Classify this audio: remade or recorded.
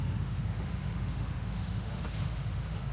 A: remade